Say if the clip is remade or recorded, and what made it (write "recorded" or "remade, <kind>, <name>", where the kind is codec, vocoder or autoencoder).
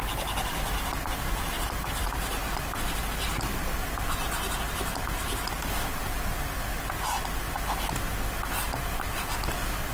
recorded